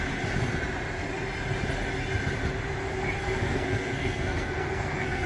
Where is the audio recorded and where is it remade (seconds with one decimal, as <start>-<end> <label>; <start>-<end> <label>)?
0.0-3.2 recorded; 3.2-5.3 remade

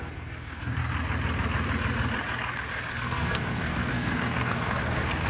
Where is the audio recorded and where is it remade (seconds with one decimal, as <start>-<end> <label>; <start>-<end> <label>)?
0.0-0.8 remade; 0.8-2.9 recorded; 2.9-5.3 remade

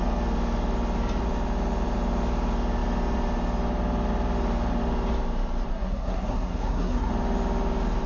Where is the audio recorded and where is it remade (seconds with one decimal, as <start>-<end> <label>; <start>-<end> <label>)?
0.0-5.7 recorded; 5.7-7.1 remade; 7.1-8.1 recorded